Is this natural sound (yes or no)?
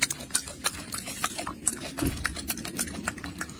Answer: no